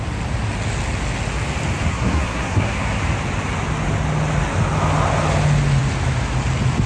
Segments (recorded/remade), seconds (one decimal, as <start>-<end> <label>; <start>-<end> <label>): 0.0-1.9 recorded; 1.9-3.0 remade; 3.0-6.9 recorded